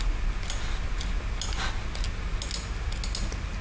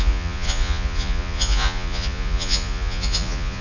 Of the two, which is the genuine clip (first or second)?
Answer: first